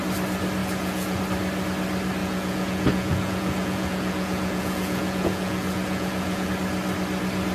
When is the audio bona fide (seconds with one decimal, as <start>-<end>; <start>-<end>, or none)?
0.0-0.6; 1.2-2.2; 6.5-7.5